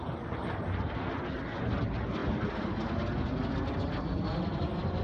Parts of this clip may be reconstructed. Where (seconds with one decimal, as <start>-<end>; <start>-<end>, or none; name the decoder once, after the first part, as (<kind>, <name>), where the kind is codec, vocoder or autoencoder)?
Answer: 0.0-0.4 (vocoder, BigVGAN v2); 1.4-2.2